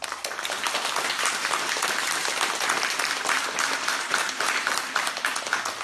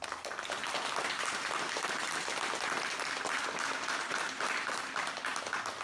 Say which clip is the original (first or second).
second